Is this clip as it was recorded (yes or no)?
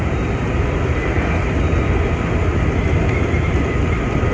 yes